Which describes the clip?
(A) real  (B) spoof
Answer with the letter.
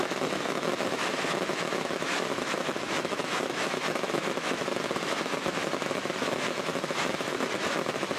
B